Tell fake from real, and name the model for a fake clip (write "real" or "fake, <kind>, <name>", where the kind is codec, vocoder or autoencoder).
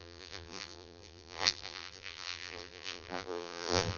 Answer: fake, vocoder, BigVGAN v2